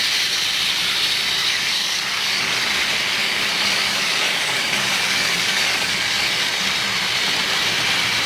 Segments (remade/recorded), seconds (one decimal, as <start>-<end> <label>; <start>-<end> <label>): 0.0-1.4 recorded; 1.4-2.6 remade; 2.6-3.2 recorded; 3.2-6.3 remade; 6.3-8.3 recorded